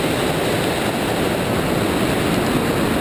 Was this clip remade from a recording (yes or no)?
no